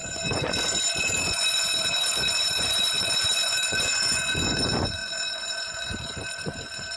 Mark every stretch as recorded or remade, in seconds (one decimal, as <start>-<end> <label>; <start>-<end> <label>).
0.0-7.0 remade